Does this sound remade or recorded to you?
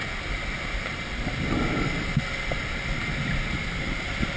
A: recorded